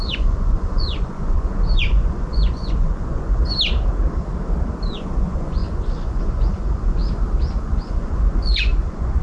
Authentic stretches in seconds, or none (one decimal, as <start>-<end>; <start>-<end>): 3.4-4.9; 7.0-7.6